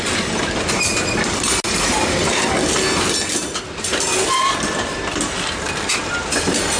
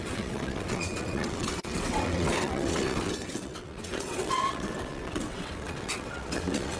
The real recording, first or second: first